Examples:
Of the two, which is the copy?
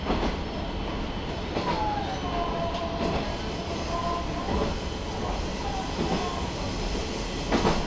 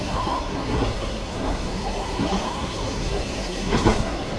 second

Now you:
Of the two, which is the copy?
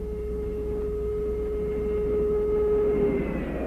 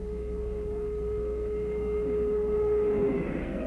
second